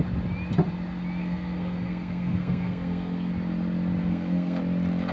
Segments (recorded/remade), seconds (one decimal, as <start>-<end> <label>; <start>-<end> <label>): 0.0-1.2 recorded; 1.2-3.3 remade; 3.3-4.0 recorded; 4.0-4.6 remade; 4.6-5.1 recorded